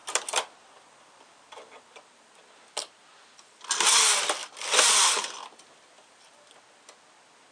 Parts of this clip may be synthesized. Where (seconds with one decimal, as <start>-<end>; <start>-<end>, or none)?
0.0-1.8; 4.4-6.5